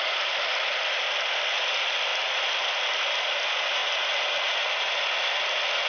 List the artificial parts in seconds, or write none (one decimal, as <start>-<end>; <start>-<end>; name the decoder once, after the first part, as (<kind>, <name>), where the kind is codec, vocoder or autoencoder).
none